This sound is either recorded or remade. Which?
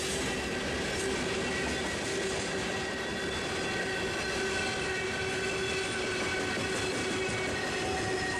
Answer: recorded